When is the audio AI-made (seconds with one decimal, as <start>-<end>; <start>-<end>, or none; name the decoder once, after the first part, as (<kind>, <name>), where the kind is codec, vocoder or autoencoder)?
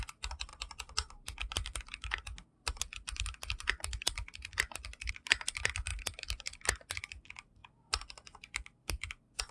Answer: 0.0-0.5 (vocoder, BigVGAN v2); 5.1-5.9; 7.0-7.6; 8.8-9.5